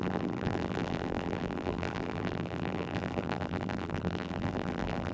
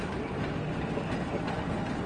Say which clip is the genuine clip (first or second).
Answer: second